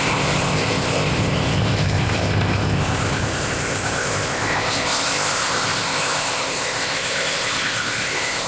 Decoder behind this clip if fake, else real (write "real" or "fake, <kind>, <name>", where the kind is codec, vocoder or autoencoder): fake, codec, ZipCodec